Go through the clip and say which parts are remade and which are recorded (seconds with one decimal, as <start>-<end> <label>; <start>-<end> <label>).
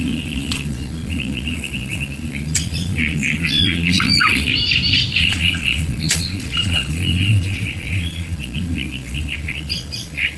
0.0-4.5 remade; 4.5-5.2 recorded; 5.2-10.4 remade